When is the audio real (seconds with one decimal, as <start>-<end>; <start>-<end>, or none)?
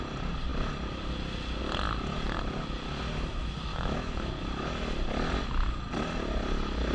0.0-3.7; 4.3-6.9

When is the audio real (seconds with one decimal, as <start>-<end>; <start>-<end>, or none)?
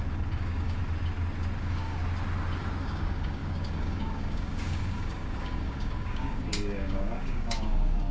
0.8-1.6; 2.0-2.8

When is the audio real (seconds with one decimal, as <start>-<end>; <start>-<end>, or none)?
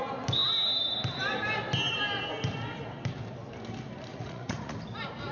0.0-4.1; 4.8-5.3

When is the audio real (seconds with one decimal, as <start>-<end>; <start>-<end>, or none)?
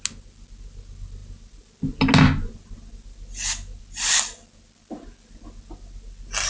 0.0-6.5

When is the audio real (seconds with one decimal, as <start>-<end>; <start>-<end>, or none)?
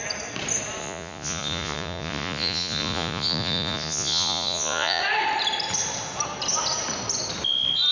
0.0-0.8; 5.0-7.9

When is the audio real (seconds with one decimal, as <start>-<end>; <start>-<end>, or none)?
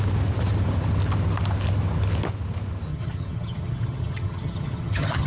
0.0-2.9